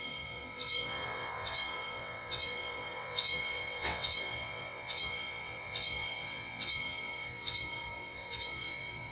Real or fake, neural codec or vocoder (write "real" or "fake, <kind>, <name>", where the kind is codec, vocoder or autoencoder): fake, vocoder, WaveNeXt